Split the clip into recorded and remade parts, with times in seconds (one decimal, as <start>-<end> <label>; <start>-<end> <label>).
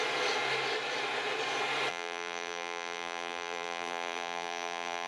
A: 0.0-1.9 recorded; 1.9-5.1 remade